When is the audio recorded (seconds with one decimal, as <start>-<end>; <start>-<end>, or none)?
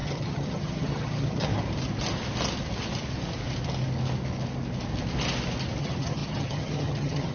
1.5-5.8